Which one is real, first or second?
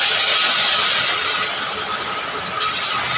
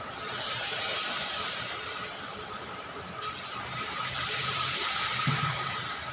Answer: first